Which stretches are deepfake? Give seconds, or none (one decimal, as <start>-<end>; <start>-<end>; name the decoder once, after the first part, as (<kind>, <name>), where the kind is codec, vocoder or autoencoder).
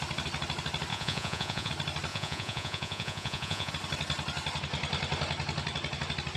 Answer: 0.9-1.7 (vocoder, Vocos); 2.1-3.7